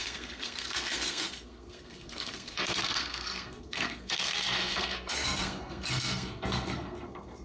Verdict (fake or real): fake